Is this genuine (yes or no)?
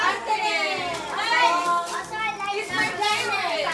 yes